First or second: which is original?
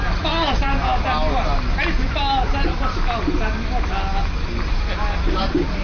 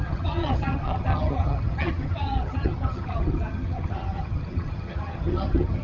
first